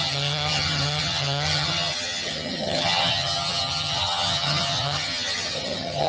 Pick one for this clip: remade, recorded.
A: remade